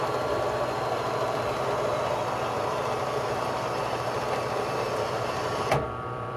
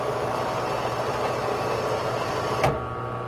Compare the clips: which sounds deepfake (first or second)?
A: first